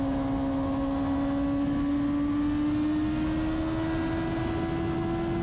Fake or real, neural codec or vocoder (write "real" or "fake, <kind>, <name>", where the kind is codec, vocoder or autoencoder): real